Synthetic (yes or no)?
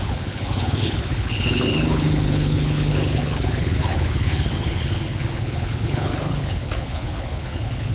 yes